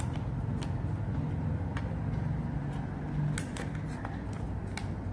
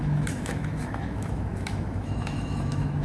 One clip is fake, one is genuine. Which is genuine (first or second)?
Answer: first